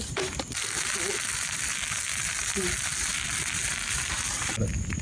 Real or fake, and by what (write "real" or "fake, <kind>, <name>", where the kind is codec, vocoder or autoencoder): real